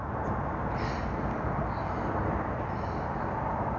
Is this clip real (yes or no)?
yes